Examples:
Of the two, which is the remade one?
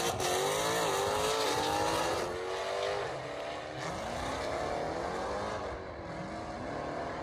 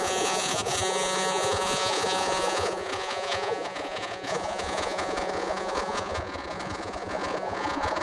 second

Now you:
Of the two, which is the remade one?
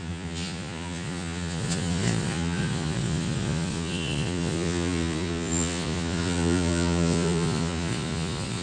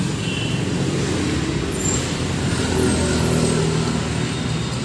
first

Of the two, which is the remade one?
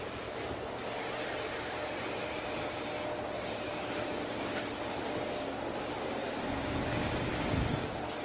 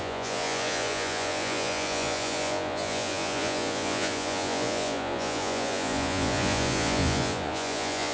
second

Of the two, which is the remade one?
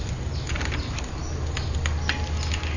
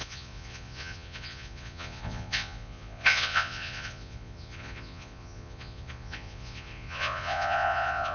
second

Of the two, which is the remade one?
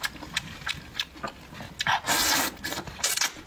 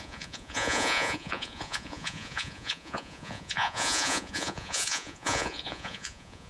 second